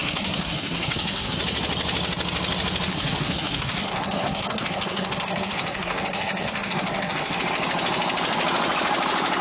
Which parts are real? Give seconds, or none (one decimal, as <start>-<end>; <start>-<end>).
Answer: 1.4-2.9; 7.4-9.4